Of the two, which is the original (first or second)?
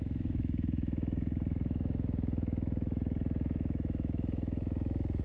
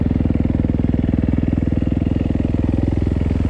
second